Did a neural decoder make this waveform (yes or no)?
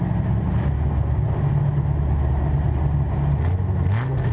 no